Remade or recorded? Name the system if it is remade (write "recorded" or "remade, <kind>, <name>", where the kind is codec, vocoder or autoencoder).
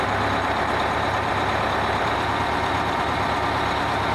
remade, vocoder, BigVGAN v2